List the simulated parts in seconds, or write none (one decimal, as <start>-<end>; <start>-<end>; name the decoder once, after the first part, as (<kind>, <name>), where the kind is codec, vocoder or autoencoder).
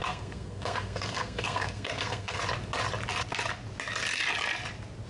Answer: 0.0-2.4 (codec, SNAC)